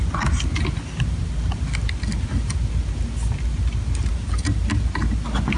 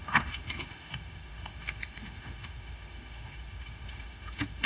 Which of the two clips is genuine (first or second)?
first